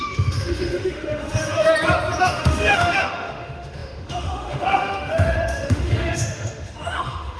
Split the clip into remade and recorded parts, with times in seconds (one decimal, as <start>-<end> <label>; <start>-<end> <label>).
0.0-1.7 remade; 1.7-2.2 recorded; 2.2-7.4 remade

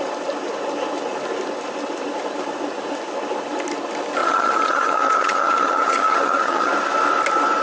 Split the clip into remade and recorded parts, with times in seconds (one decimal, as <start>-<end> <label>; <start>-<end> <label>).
0.0-4.2 recorded; 4.2-6.7 remade; 6.7-7.6 recorded

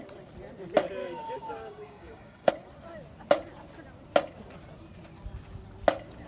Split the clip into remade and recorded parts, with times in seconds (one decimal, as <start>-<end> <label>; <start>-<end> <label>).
0.0-1.0 recorded; 1.0-2.5 remade; 2.5-6.3 recorded